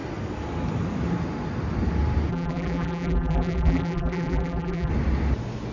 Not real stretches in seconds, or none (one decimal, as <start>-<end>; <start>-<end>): 2.3-4.9